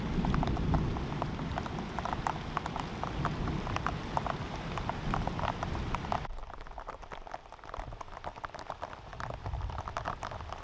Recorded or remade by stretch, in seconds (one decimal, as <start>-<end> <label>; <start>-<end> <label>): 0.0-4.0 recorded; 4.0-7.0 remade; 7.0-7.4 recorded; 7.4-8.6 remade; 8.6-9.1 recorded; 9.1-10.1 remade; 10.1-10.6 recorded